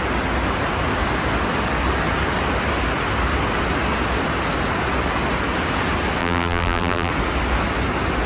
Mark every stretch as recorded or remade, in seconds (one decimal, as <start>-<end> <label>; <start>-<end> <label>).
0.0-6.2 recorded; 6.2-7.1 remade; 7.1-8.3 recorded